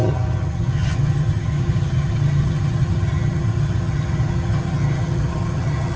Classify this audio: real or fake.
fake